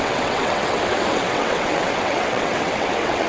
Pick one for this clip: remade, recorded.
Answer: remade